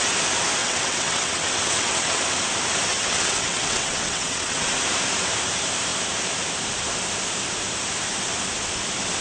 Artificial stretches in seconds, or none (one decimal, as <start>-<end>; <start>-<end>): 0.6-2.2; 2.9-4.7